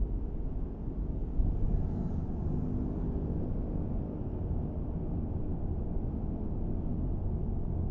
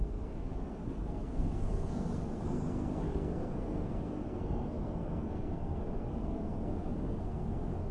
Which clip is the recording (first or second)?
first